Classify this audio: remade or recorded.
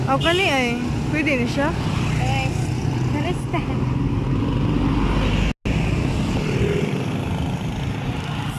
recorded